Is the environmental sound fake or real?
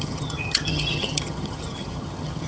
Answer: fake